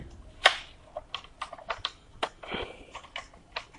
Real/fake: real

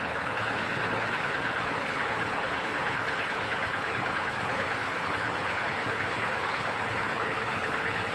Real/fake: fake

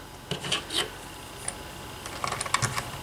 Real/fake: real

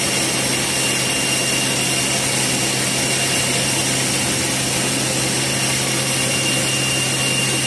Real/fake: real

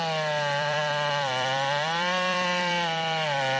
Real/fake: fake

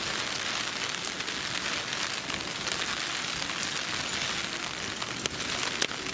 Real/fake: real